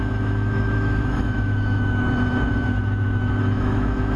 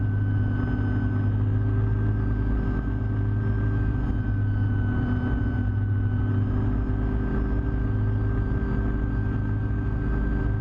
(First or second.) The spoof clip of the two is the first